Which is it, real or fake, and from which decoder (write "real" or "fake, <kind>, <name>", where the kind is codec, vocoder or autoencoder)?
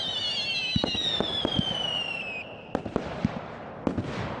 real